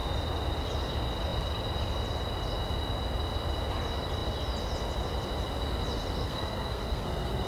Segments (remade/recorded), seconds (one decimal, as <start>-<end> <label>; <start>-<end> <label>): 0.0-6.2 recorded; 6.2-7.5 remade